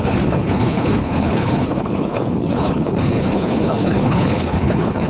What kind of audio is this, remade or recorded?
remade